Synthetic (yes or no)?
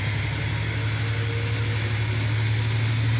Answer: no